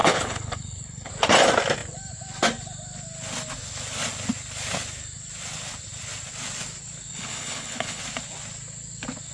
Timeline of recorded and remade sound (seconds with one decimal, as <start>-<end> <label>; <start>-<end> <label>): 0.0-1.1 remade; 1.1-7.1 recorded; 7.1-8.0 remade; 8.0-9.3 recorded

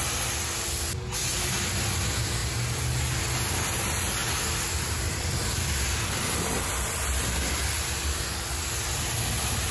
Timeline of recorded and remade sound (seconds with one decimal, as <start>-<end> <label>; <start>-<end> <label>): 0.0-4.2 recorded; 4.2-8.2 remade; 8.2-9.7 recorded

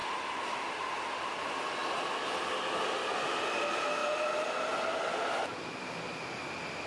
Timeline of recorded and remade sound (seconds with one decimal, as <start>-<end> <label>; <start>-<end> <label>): 0.0-6.9 recorded